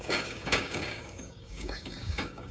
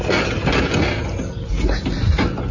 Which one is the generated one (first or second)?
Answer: first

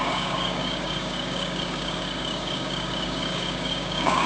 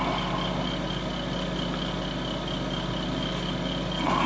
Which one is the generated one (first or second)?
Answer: first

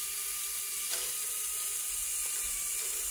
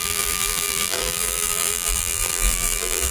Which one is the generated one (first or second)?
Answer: second